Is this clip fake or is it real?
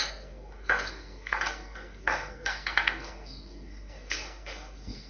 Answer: fake